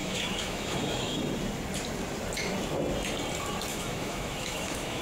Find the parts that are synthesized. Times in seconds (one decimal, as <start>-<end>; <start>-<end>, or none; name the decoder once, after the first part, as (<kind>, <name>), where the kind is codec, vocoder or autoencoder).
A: 0.0-1.2 (autoencoder, DAC-VAE); 3.7-5.0